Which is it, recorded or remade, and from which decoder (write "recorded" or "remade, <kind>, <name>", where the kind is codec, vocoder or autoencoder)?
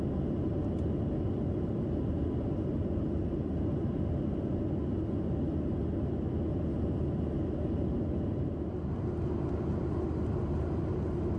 recorded